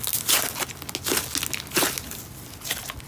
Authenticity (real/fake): real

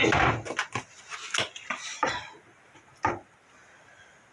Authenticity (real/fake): real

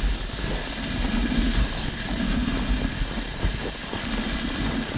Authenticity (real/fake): real